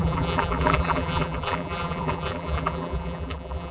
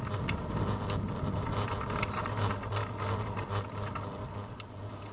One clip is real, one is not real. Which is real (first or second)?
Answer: second